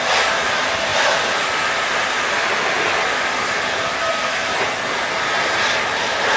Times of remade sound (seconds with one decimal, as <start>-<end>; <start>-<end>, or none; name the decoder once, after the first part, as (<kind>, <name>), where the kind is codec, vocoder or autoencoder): none